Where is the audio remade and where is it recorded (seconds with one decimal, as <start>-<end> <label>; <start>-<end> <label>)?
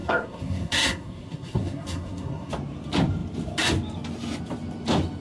0.0-2.5 remade; 2.5-5.2 recorded